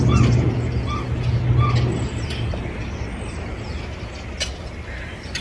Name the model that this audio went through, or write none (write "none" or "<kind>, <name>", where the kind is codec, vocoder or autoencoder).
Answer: none